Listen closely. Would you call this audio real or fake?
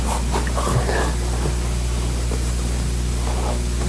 real